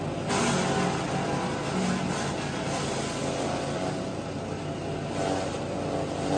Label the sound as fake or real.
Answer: real